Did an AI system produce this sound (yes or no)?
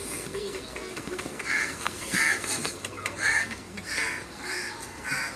yes